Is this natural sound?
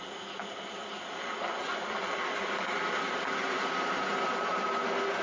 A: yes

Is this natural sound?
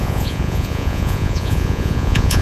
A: no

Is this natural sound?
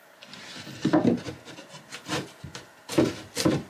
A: yes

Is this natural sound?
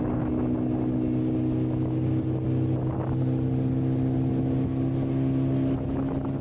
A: yes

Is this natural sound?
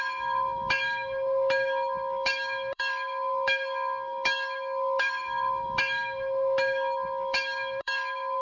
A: no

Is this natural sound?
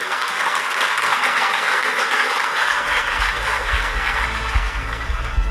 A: no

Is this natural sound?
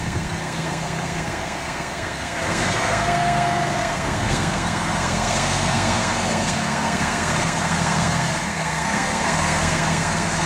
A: no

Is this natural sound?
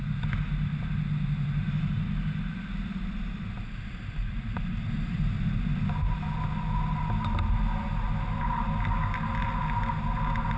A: yes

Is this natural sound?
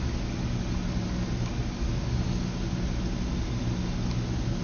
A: yes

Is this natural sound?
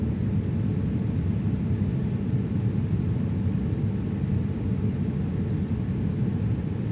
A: yes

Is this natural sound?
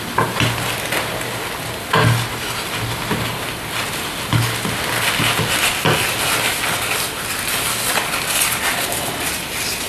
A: yes